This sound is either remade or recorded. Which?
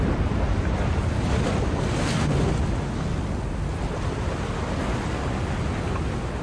recorded